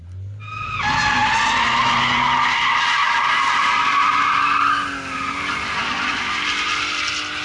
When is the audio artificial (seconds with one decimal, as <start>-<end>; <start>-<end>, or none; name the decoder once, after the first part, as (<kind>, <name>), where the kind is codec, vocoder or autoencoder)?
none

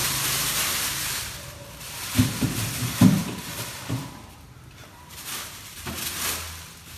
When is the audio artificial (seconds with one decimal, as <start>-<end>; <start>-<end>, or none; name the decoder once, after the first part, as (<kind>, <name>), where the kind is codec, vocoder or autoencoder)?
0.0-1.1 (vocoder, BigVGAN v2)